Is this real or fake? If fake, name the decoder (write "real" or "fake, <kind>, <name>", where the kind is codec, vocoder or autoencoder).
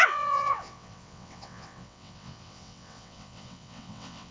fake, vocoder, WaveNeXt